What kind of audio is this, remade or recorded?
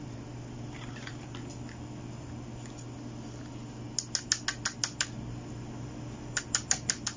recorded